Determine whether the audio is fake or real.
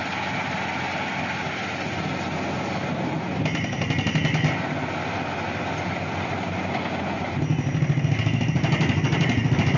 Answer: real